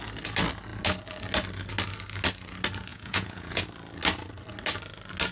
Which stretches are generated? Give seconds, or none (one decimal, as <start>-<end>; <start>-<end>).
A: 2.9-3.6